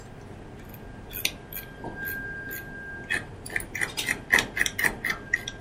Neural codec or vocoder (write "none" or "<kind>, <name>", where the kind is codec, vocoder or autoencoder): none